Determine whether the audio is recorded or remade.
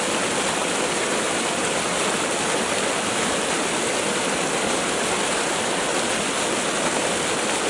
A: recorded